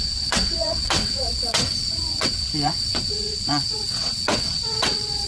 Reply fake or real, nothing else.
fake